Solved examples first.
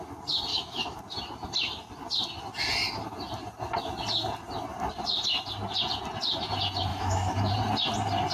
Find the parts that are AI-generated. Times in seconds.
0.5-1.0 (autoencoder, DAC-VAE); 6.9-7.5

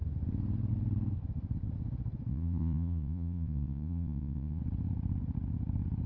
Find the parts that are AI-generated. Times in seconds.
2.3-4.6 (vocoder, Vocos)

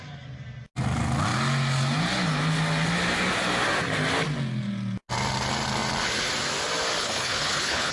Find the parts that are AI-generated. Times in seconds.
7.0-7.9 (codec, HILCodec)